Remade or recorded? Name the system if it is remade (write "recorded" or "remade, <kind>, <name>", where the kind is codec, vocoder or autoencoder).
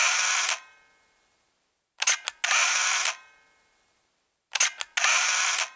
recorded